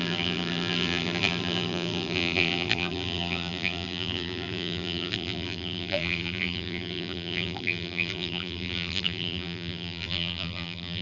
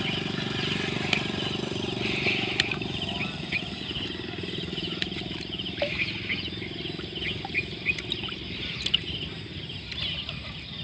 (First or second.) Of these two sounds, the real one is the second